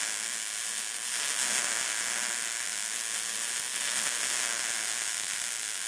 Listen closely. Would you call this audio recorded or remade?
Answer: recorded